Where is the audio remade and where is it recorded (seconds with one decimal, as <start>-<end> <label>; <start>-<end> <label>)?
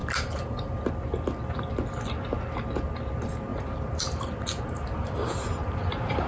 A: 0.0-0.9 remade; 0.9-3.5 recorded; 3.5-6.3 remade